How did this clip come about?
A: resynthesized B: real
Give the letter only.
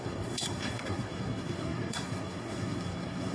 A